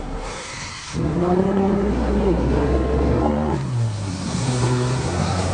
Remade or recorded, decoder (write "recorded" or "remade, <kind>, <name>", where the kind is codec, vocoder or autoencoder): remade, codec, SNAC